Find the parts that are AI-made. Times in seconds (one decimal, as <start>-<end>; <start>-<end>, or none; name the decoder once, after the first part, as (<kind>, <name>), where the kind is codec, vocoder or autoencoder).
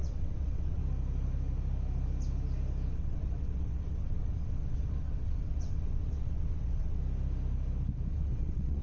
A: 0.0-0.8 (vocoder, WaveNeXt); 2.9-7.0; 8.1-8.8